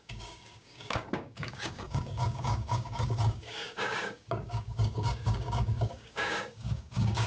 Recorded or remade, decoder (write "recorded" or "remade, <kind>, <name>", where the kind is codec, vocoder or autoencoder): remade, codec, DAC